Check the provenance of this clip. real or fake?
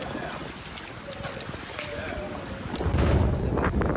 real